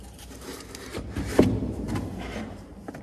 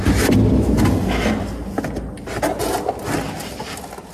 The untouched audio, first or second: second